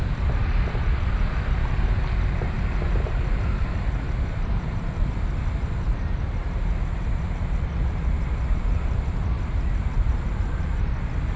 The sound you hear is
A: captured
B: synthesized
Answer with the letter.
B